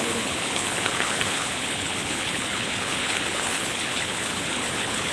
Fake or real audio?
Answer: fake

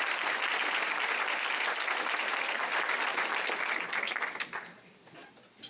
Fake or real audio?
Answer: real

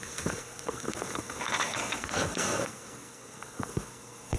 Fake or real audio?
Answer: fake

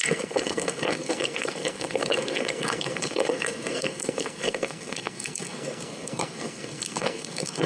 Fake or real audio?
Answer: fake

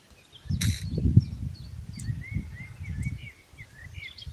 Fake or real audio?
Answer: real